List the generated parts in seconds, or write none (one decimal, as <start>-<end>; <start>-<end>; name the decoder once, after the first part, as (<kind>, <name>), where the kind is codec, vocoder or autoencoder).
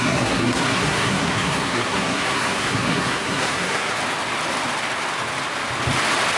0.0-4.0 (codec, SNAC)